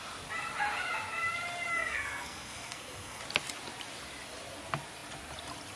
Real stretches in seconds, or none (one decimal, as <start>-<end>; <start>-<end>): 0.0-1.7; 3.2-5.8